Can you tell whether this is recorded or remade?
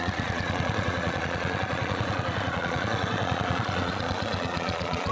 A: remade